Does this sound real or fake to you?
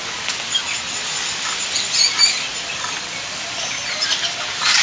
real